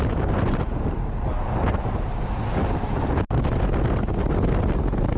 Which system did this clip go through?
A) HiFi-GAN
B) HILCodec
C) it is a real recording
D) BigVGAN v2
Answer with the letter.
C